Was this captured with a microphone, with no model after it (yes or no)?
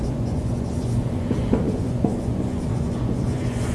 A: no